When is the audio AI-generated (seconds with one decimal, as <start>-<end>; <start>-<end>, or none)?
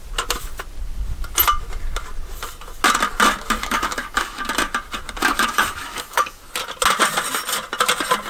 3.6-4.4; 5.2-6.5